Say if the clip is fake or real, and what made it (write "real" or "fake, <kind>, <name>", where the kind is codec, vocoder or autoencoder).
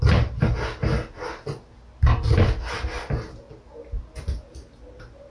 real